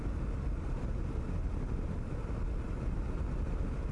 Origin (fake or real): real